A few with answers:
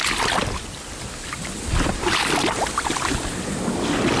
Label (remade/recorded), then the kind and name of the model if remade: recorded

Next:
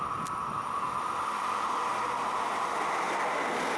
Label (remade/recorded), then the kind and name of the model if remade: recorded